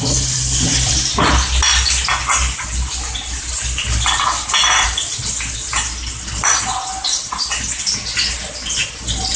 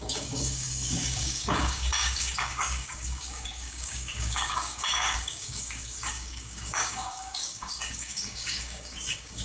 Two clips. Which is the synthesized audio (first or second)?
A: second